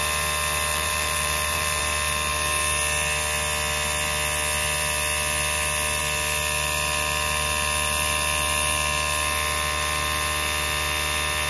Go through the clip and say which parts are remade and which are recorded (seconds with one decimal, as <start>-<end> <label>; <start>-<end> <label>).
0.0-0.7 recorded; 0.7-1.8 remade; 1.8-11.5 recorded